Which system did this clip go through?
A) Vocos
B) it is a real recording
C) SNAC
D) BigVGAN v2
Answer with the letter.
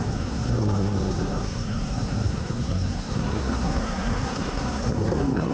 C